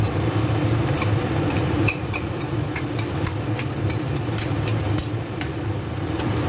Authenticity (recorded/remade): remade